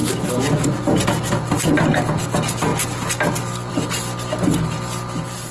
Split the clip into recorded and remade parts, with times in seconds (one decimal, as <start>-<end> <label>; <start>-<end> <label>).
0.0-5.5 recorded